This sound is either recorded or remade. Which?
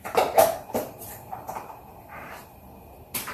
remade